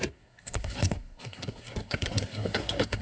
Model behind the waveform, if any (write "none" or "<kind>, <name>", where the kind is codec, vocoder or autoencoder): codec, SNAC